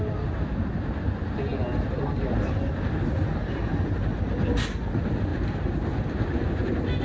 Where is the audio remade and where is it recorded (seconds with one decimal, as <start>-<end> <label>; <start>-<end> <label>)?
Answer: 0.0-7.0 recorded